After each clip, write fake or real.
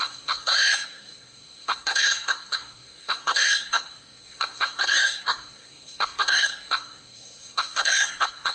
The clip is fake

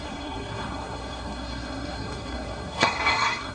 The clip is fake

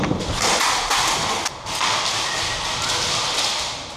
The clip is real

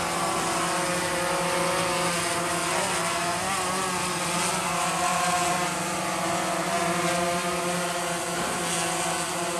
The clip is real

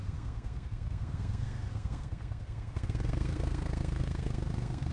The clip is fake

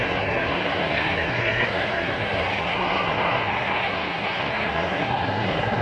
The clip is fake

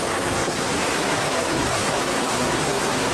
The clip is fake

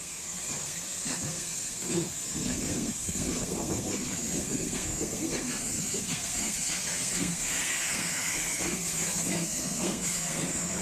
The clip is fake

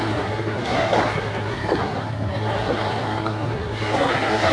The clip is fake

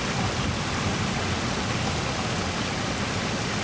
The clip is real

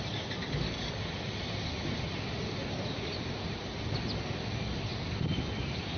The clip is real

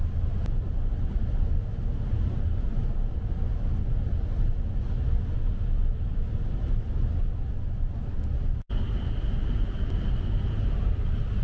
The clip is real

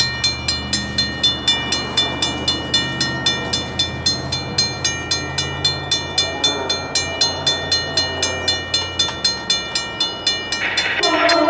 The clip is real